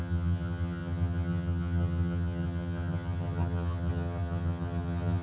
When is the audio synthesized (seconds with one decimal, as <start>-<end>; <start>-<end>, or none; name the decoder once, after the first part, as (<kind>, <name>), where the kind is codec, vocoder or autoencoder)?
0.0-5.2 (vocoder, HiFi-GAN)